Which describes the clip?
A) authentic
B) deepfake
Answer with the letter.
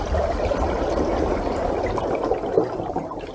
A